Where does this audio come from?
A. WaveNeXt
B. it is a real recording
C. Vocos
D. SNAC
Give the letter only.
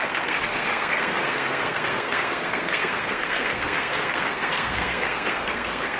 D